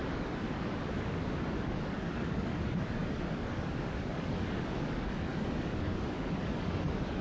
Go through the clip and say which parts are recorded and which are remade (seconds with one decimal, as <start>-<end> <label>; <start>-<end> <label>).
0.0-7.2 remade